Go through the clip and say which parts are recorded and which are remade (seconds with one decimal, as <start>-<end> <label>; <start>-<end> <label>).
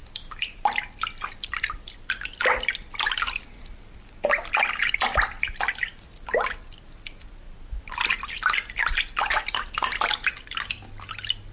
0.0-11.5 recorded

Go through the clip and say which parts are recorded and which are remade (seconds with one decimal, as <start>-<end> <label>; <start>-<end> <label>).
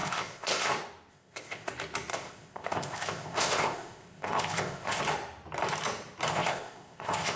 0.0-0.7 remade; 0.7-1.1 recorded; 1.1-1.7 remade; 1.7-2.1 recorded; 2.1-5.0 remade; 5.0-6.3 recorded; 6.3-7.4 remade